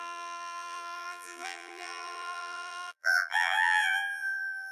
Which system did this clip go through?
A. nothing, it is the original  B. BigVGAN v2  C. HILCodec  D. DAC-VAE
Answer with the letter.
B